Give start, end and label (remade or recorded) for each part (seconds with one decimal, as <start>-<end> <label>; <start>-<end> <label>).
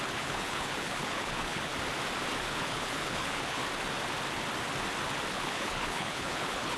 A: 0.0-1.7 remade; 1.7-2.4 recorded; 2.4-3.6 remade; 3.6-5.3 recorded; 5.3-6.8 remade